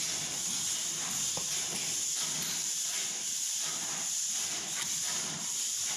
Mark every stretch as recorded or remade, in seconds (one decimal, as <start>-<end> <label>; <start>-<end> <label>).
0.0-2.6 recorded; 2.6-6.0 remade